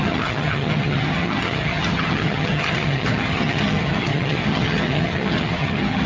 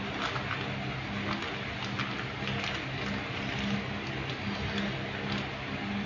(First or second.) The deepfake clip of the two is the first